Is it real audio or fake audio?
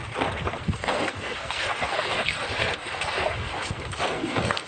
fake